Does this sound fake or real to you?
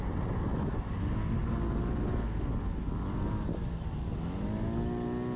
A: real